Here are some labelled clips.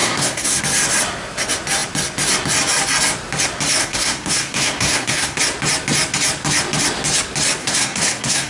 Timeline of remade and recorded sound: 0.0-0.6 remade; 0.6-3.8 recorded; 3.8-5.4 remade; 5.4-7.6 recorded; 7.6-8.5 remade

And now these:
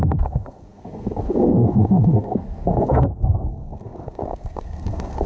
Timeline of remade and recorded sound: 0.0-5.3 remade

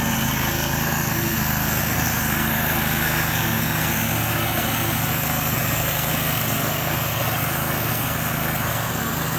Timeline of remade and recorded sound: 0.0-9.4 remade

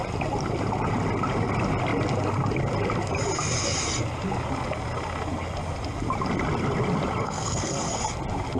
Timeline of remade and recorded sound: 0.0-7.2 recorded; 7.2-8.0 remade; 8.0-8.6 recorded

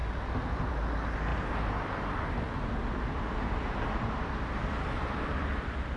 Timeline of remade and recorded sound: 0.0-6.0 recorded

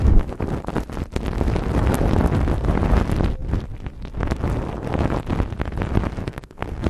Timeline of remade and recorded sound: 0.0-6.2 recorded; 6.2-6.9 remade

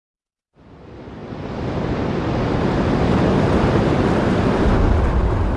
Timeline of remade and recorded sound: 0.0-5.6 recorded

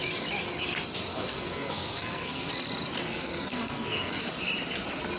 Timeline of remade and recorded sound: 0.0-1.1 recorded; 1.1-2.5 remade; 2.5-3.0 recorded; 3.0-4.2 remade; 4.2-5.2 recorded